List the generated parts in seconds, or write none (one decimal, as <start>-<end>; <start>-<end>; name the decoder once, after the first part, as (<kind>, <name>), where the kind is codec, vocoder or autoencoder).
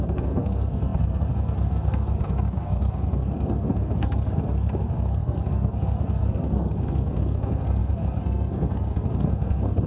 0.0-9.9 (codec, SNAC)